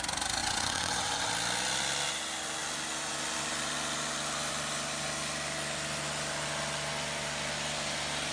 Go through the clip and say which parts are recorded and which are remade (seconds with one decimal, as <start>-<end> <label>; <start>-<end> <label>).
0.0-0.4 recorded; 0.4-1.3 remade; 1.3-8.3 recorded